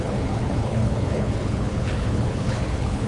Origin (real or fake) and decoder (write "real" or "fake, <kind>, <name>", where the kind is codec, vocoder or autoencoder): fake, codec, HILCodec